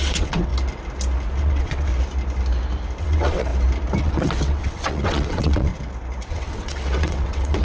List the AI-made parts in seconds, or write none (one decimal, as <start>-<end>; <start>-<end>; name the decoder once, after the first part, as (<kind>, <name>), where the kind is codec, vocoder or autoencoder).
0.0-0.5 (vocoder, WaveNeXt); 1.4-1.9; 3.0-3.5; 4.0-5.7; 6.3-7.6